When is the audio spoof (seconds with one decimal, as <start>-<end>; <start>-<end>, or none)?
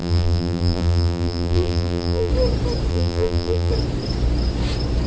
0.0-2.3; 2.9-3.7